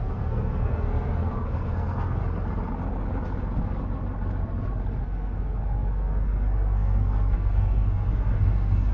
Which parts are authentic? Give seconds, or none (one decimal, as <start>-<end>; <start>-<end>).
2.2-5.0